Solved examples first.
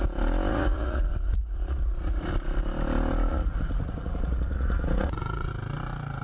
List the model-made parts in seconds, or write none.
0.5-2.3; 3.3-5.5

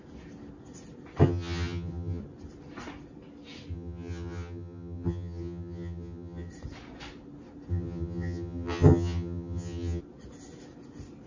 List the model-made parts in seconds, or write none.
1.2-2.2; 3.7-6.5; 7.7-10.0

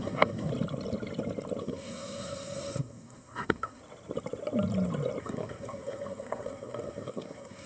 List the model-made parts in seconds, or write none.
0.0-0.5; 1.6-3.8; 5.2-7.7

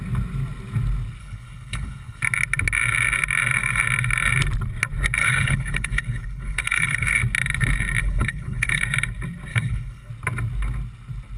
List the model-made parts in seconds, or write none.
1.2-2.2; 5.2-7.2; 8.0-8.8; 9.5-10.1

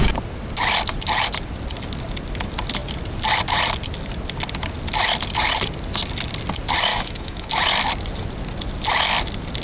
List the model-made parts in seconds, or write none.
6.9-7.5

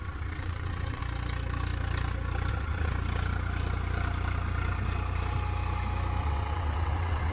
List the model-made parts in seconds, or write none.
0.0-1.0; 2.5-2.9; 6.2-7.3